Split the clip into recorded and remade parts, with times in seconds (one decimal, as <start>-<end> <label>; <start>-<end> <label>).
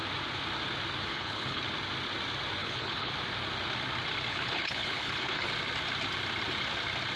0.0-1.1 recorded; 1.1-1.6 remade; 1.6-2.6 recorded; 2.6-3.1 remade; 3.1-4.3 recorded; 4.3-5.5 remade; 5.5-7.2 recorded